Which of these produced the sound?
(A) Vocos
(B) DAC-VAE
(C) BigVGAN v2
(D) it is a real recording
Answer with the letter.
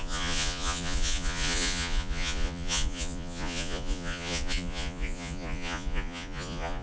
A